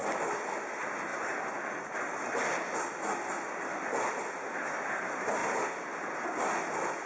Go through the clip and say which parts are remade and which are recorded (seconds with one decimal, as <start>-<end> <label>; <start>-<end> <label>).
0.0-7.1 recorded